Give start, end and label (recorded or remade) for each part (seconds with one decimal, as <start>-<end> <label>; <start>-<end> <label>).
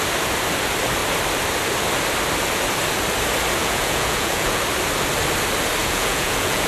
0.0-3.6 recorded; 3.6-4.6 remade; 4.6-5.8 recorded; 5.8-6.7 remade